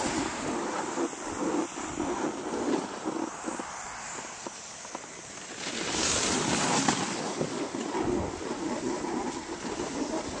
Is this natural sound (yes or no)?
no